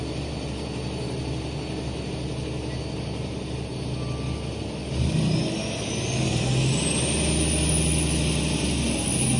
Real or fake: real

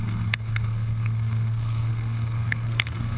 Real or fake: fake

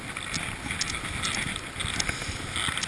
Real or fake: real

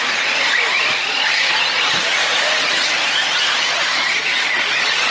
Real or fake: real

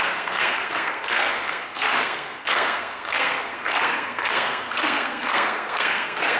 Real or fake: fake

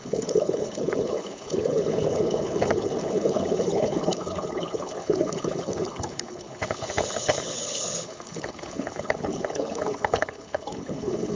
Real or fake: fake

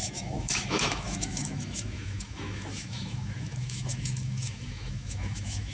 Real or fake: fake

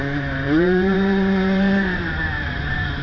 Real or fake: fake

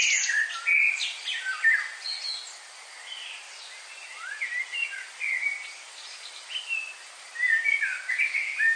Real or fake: real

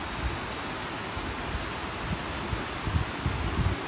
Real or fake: real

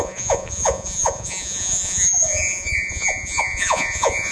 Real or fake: fake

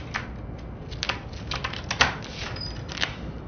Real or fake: real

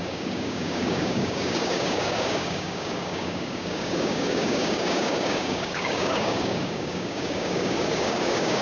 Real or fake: fake